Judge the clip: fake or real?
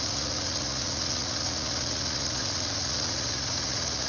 fake